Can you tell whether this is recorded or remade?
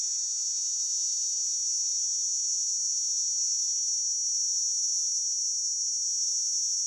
remade